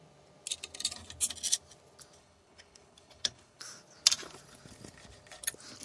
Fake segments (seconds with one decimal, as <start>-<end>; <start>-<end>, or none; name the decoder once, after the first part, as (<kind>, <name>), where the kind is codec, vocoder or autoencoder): 2.2-3.6 (codec, HILCodec)